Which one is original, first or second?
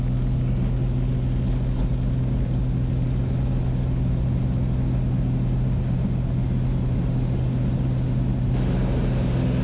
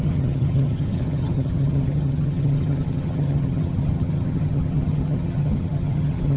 first